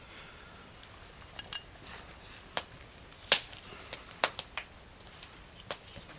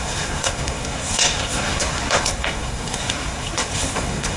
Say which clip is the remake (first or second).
second